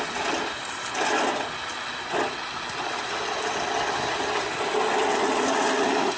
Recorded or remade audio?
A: recorded